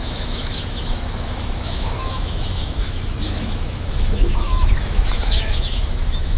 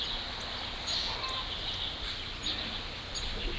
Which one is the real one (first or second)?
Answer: second